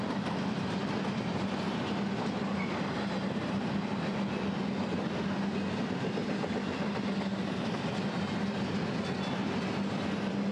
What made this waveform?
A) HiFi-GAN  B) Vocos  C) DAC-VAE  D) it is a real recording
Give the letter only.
D